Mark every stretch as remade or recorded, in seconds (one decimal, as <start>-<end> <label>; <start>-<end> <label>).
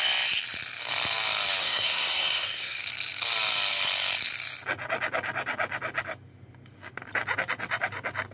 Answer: 0.0-1.6 recorded; 1.6-2.8 remade; 2.8-8.3 recorded